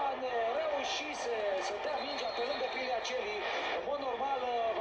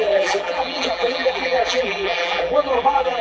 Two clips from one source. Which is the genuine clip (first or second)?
first